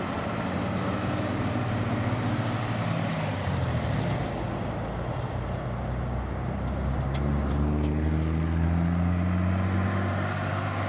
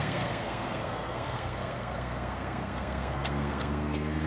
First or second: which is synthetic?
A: second